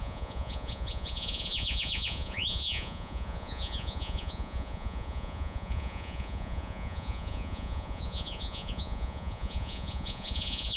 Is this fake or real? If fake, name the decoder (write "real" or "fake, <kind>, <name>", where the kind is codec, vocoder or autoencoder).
fake, vocoder, Vocos